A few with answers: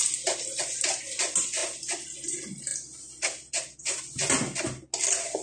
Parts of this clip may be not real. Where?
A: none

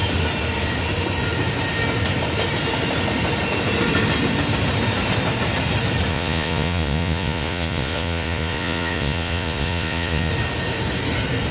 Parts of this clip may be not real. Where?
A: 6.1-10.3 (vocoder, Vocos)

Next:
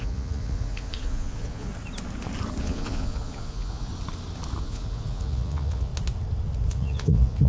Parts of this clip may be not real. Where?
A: 0.0-1.7 (vocoder, Vocos); 2.6-3.9; 4.6-5.9; 6.7-7.5